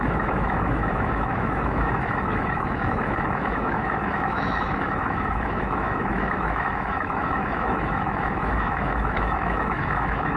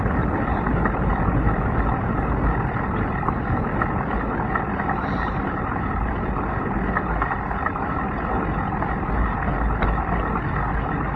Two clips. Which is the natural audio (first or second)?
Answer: second